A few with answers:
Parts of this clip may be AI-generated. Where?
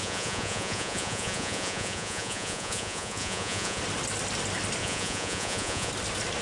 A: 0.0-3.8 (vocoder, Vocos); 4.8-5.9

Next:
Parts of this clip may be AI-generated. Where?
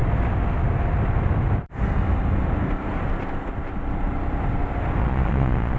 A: 5.0-5.8 (vocoder, Vocos)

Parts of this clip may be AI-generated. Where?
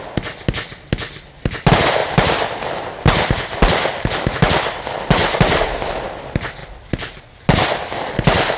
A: none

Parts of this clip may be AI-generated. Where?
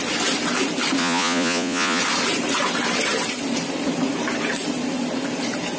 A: 1.0-2.0 (vocoder, Vocos)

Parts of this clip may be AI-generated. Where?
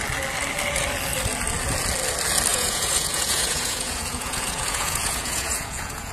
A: 2.5-6.1 (vocoder, Vocos)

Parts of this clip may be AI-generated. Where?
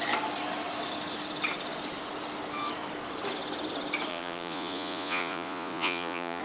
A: 4.1-6.4 (vocoder, Vocos)